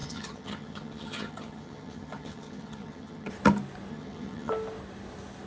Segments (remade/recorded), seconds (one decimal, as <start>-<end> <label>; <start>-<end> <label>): 0.0-3.3 remade; 3.3-3.9 recorded; 3.9-4.5 remade; 4.5-5.5 recorded